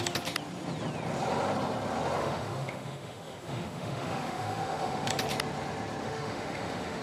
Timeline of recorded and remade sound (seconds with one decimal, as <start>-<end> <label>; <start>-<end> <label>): 0.0-2.2 recorded; 2.2-5.1 remade; 5.1-6.0 recorded; 6.0-7.0 remade